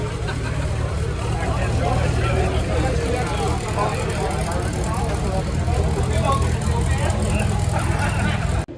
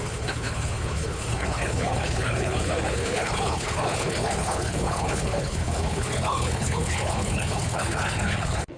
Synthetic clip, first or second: second